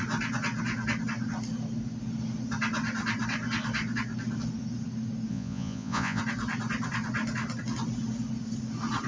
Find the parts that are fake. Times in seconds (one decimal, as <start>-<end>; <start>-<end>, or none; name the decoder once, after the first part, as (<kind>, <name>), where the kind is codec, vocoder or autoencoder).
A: 5.3-6.2 (vocoder, Vocos)